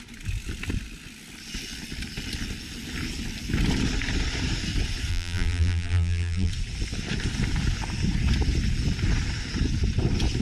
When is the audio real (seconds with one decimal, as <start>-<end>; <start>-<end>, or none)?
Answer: 0.0-5.1; 6.5-10.4